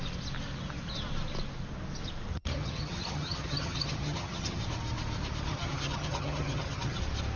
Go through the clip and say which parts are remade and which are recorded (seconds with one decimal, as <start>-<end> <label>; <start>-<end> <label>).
0.0-2.3 recorded; 2.3-4.6 remade; 4.6-5.5 recorded; 5.5-7.0 remade; 7.0-7.4 recorded